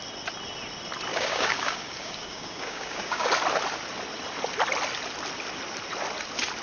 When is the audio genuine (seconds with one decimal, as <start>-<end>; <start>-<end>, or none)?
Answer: 0.0-1.1; 3.3-6.6